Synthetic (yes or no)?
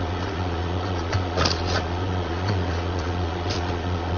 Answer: yes